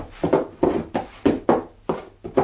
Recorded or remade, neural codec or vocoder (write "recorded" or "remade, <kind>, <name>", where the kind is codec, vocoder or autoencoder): recorded